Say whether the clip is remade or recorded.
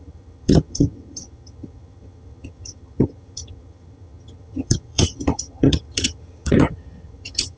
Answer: remade